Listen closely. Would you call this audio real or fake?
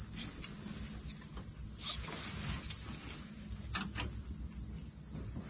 real